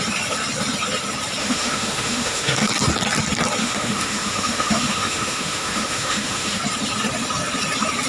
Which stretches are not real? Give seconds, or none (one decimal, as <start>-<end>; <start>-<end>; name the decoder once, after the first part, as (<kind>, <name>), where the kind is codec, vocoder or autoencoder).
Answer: 1.4-2.7 (autoencoder, DAC-VAE); 3.6-6.6